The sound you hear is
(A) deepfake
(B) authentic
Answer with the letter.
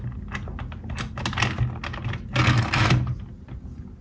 B